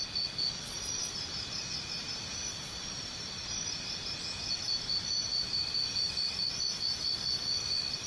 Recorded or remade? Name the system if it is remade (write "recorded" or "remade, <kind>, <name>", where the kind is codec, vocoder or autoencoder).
recorded